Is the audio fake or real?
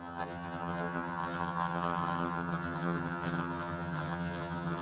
fake